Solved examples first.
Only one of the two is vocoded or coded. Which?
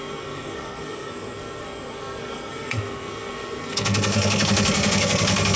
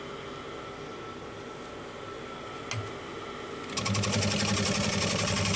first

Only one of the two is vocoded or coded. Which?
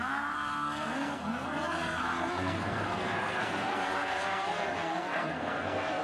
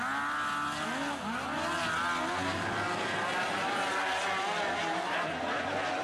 first